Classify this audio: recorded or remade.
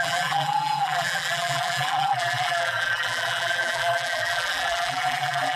remade